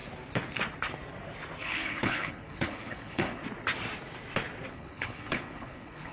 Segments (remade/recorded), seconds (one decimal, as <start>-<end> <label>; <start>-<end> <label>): 0.0-1.6 recorded; 1.6-3.4 remade; 3.4-4.7 recorded; 4.7-6.1 remade